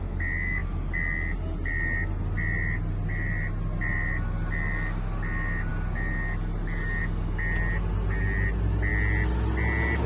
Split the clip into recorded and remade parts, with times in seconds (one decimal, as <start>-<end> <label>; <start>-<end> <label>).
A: 0.0-10.1 recorded